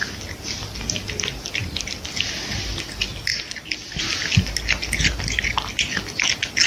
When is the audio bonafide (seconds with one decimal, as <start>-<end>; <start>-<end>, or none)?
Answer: 0.0-1.6; 2.6-3.3; 4.0-6.7